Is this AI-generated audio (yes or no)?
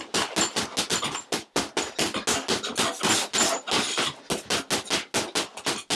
no